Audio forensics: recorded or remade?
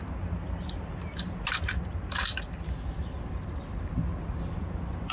recorded